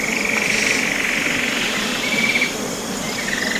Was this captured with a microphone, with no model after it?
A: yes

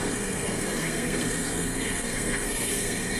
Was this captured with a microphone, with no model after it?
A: no